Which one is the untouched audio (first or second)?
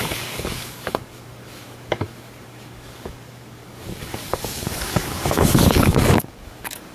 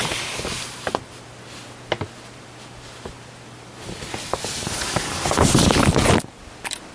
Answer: second